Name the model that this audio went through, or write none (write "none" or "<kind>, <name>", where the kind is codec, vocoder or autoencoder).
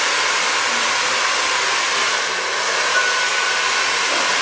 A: none